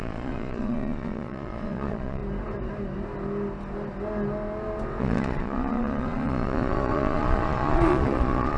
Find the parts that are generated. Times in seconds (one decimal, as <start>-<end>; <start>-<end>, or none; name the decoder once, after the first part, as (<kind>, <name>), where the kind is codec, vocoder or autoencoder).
0.0-2.2 (vocoder, Vocos); 5.0-8.6